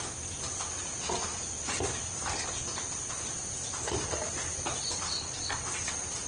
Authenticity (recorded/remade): recorded